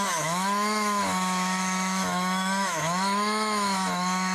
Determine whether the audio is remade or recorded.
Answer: remade